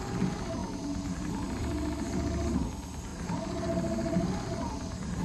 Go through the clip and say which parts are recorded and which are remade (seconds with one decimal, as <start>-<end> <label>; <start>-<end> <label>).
0.0-5.2 recorded